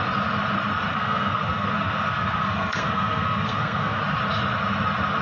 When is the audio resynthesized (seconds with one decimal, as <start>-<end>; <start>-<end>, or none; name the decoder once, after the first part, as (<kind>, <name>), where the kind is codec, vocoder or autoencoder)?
0.9-4.0 (codec, SNAC)